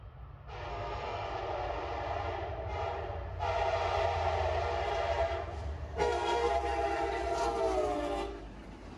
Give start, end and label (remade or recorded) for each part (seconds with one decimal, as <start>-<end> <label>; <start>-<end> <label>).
0.0-0.7 recorded; 0.7-1.3 remade; 1.3-5.8 recorded; 5.8-6.5 remade; 6.5-9.0 recorded